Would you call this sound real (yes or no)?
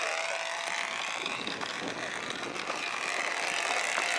yes